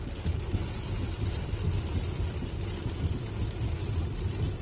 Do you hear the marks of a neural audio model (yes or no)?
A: no